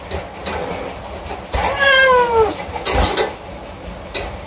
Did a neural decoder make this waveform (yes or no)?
no